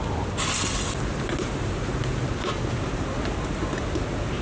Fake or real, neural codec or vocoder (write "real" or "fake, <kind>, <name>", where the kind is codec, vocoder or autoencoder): real